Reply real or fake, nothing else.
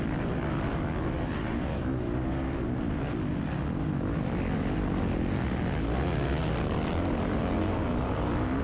real